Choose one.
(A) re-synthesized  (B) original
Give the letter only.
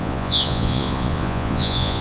A